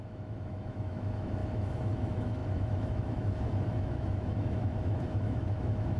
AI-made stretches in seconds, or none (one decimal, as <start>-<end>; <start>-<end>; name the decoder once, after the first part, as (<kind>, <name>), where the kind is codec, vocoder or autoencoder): 0.0-6.0 (autoencoder, DAC-VAE)